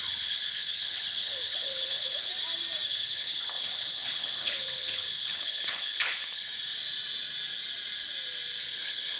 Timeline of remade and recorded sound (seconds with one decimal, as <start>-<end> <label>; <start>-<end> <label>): 0.0-2.3 remade; 2.3-2.9 recorded; 2.9-6.5 remade; 6.5-8.6 recorded; 8.6-9.2 remade